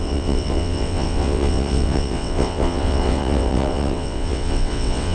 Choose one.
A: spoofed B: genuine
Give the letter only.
A